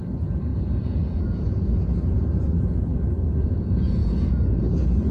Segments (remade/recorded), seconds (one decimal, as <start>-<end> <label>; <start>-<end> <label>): 0.0-0.5 recorded; 0.5-3.6 remade; 3.6-4.0 recorded; 4.0-4.6 remade; 4.6-5.1 recorded